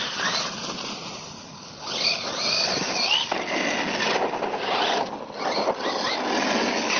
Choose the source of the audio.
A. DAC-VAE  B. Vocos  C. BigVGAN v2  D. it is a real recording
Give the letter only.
D